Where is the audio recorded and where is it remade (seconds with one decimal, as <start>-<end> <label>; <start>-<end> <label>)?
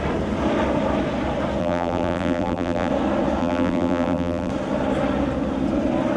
0.0-1.6 recorded; 1.6-2.9 remade; 2.9-3.4 recorded; 3.4-4.5 remade; 4.5-6.2 recorded